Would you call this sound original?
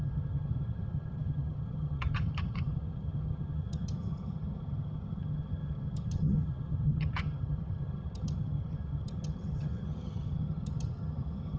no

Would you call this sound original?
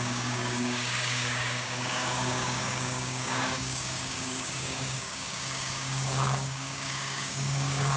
no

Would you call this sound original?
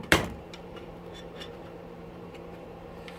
no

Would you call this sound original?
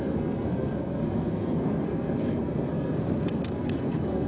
no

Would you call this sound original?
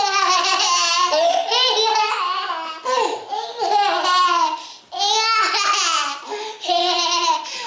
yes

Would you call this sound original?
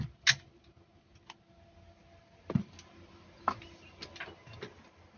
yes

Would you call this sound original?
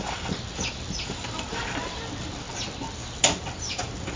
yes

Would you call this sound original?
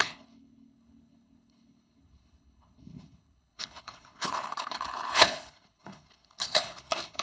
no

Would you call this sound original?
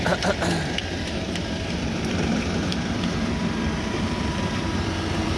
no